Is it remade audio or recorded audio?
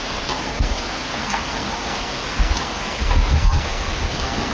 remade